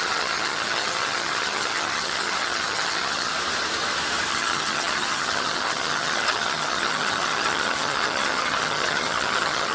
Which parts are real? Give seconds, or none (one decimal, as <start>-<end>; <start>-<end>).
3.3-4.3